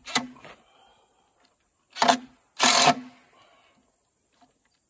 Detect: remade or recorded recorded